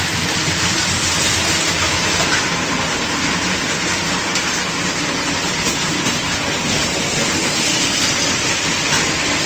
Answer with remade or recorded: recorded